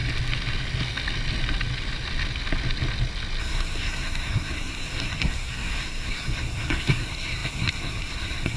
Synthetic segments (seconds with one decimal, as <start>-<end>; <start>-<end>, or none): 3.4-8.6